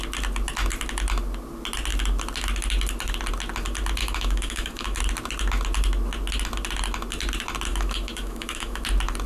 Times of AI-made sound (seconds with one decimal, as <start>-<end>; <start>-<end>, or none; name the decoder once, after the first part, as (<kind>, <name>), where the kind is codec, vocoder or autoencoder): 4.0-5.0 (autoencoder, DAC-VAE); 7.7-8.8

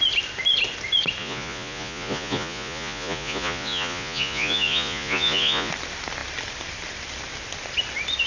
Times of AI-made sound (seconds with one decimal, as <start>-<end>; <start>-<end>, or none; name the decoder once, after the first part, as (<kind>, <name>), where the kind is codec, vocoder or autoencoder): 1.2-5.7 (vocoder, Vocos)

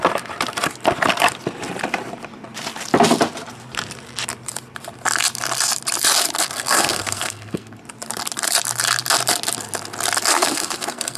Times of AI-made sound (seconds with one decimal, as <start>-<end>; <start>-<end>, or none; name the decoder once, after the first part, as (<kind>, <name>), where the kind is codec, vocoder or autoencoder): 6.4-7.8 (codec, SNAC); 10.3-11.2

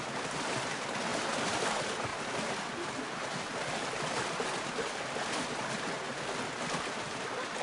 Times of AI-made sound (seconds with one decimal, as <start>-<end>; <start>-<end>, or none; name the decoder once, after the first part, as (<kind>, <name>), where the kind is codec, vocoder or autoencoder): 1.1-1.7 (vocoder, BigVGAN v2)